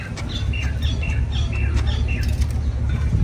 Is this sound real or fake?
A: real